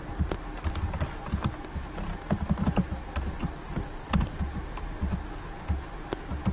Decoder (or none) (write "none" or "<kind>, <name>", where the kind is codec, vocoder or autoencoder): none